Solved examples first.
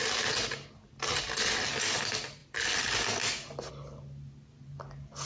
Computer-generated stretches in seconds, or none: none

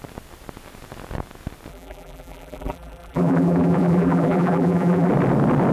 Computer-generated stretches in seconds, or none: 1.7-5.1

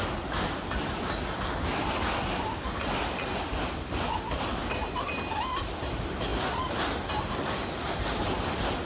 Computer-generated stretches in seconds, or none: none

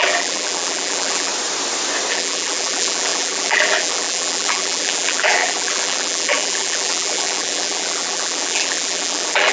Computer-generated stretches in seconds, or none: 0.0-1.3; 2.1-9.5

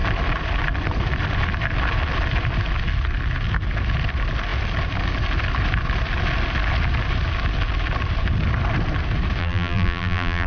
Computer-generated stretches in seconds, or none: 9.4-10.5

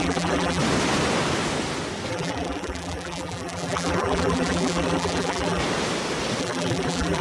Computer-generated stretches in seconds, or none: 0.0-0.6; 2.1-5.6; 6.4-7.2

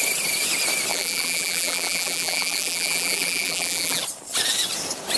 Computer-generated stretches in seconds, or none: 0.9-4.0